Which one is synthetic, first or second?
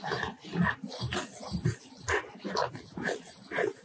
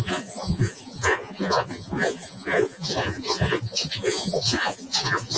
second